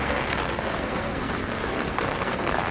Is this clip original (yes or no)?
no